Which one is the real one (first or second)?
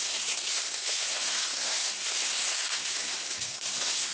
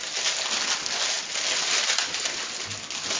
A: second